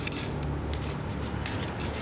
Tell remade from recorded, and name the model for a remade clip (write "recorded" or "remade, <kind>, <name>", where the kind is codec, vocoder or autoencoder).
recorded